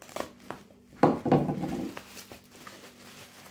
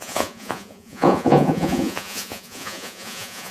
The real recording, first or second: first